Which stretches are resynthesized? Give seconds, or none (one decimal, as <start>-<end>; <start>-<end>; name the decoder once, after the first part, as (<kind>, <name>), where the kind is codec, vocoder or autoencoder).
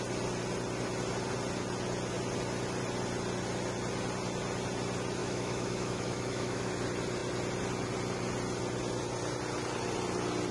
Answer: 5.2-6.7 (autoencoder, DAC-VAE)